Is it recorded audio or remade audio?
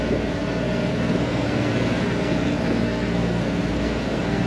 remade